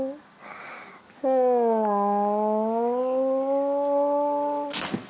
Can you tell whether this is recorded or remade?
recorded